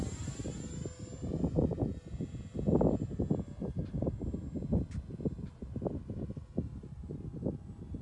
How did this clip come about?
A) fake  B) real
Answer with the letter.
B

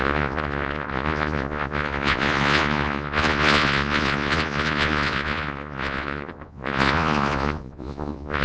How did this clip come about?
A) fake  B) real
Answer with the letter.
A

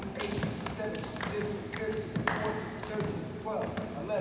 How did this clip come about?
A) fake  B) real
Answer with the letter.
B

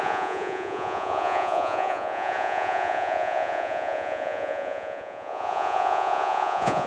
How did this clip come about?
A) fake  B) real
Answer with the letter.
A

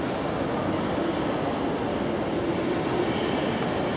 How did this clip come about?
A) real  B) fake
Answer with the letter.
A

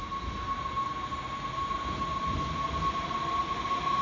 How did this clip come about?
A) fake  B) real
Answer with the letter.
B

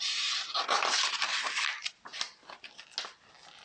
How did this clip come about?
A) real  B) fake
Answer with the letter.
A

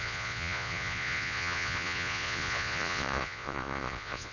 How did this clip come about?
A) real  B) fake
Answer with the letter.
B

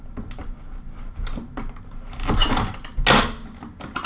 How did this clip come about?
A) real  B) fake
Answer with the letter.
A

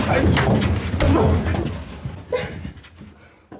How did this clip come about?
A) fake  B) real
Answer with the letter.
B